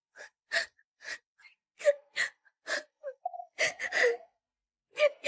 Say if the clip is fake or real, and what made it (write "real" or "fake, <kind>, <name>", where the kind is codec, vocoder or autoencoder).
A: real